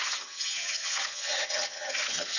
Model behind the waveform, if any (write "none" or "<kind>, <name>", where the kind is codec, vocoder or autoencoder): vocoder, HiFi-GAN